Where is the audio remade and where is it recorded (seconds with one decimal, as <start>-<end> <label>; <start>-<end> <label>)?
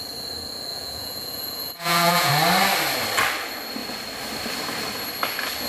0.0-0.7 recorded; 0.7-2.3 remade; 2.3-5.7 recorded